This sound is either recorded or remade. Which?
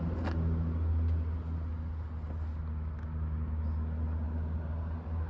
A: recorded